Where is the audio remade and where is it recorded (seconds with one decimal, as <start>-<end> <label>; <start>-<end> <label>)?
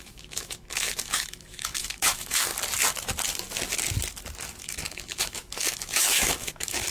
0.0-2.5 remade; 2.5-4.6 recorded; 4.6-6.9 remade